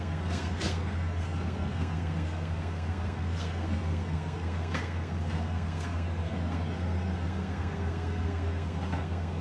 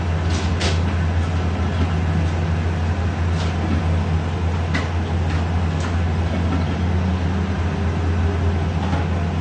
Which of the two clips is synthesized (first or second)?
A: first